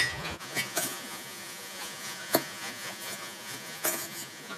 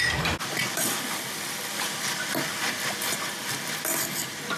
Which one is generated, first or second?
first